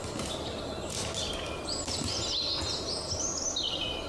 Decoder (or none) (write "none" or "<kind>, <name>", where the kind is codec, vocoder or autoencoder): none